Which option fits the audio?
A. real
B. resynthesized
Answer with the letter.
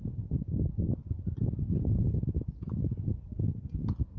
A